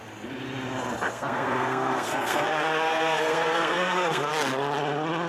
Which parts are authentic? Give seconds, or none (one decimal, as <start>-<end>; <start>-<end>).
0.0-1.1; 4.3-5.3